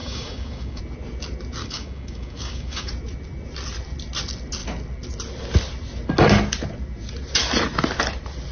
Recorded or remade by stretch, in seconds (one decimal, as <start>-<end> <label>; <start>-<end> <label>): 0.0-0.8 remade; 0.8-1.6 recorded; 1.6-2.9 remade; 2.9-8.5 recorded